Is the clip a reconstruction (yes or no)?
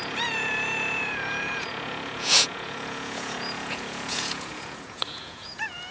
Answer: yes